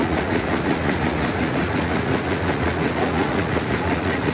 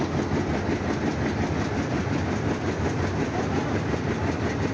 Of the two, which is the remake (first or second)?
first